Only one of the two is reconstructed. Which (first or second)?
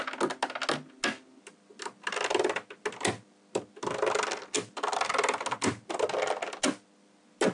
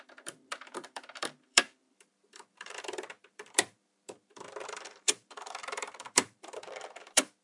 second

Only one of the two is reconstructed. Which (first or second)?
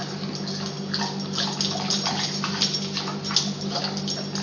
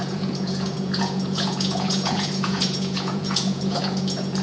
second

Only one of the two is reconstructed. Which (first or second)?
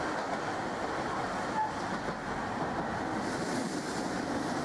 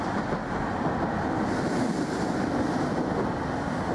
second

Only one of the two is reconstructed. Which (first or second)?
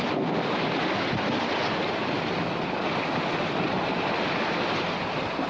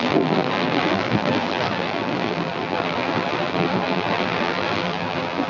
second